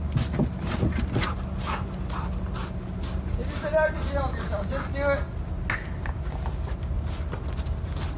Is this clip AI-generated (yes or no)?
no